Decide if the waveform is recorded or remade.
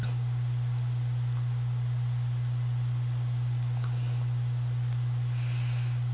recorded